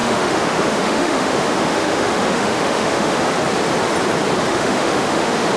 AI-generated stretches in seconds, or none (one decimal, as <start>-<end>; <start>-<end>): 0.0-3.2; 4.5-5.6